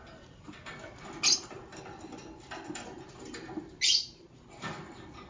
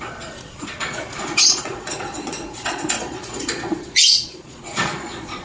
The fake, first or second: second